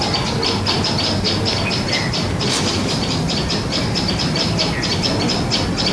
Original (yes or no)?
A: yes